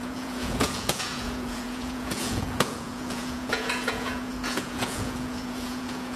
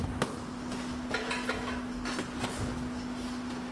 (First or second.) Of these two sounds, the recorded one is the second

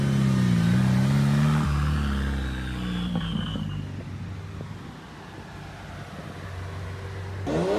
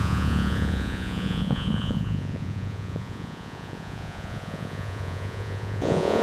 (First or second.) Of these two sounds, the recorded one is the first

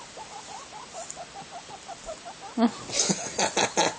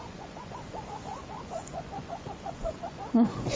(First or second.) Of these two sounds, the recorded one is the first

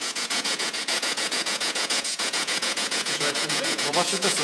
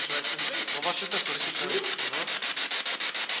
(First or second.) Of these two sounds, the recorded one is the second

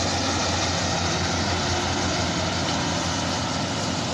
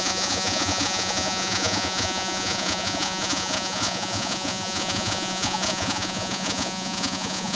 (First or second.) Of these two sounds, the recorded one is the first